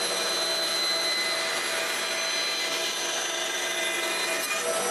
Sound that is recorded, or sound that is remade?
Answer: recorded